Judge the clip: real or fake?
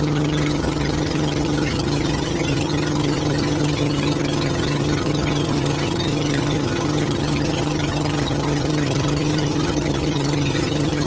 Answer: fake